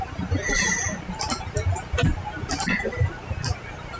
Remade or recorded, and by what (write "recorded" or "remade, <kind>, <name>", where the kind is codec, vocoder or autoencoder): recorded